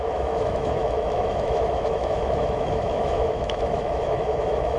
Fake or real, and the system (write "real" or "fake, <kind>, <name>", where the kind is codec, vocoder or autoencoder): fake, autoencoder, DAC-VAE